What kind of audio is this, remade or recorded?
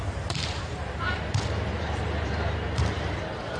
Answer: remade